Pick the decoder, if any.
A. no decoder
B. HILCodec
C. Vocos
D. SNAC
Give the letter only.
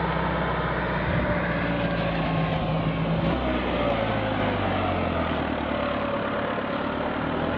A